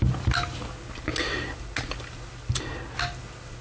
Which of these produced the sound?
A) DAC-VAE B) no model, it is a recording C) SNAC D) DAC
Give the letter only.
B